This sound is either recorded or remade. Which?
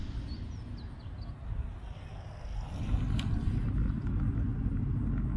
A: recorded